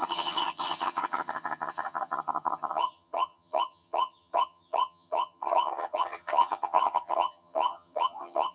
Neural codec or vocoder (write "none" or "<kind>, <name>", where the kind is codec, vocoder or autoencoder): vocoder, HiFi-GAN